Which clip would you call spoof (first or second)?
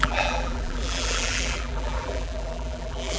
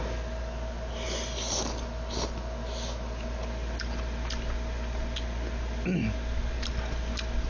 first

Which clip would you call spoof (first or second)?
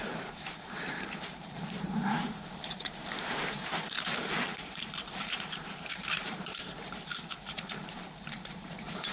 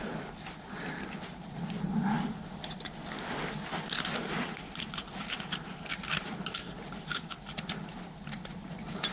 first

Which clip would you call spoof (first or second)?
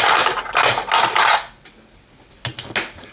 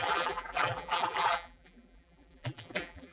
second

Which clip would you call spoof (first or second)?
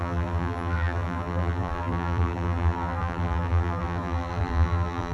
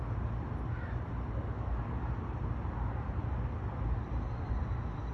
first